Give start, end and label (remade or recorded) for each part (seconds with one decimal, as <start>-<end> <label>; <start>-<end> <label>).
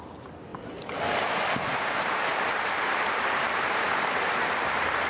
0.0-0.5 remade; 0.5-1.0 recorded; 1.0-5.1 remade